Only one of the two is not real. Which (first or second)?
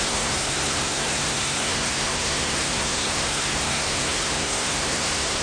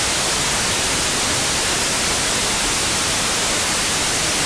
first